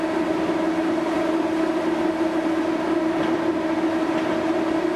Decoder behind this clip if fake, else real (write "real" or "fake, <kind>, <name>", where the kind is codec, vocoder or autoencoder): real